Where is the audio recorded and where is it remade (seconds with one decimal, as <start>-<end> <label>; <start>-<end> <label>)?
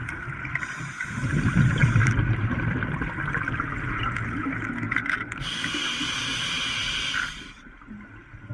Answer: 0.0-0.9 remade; 0.9-8.5 recorded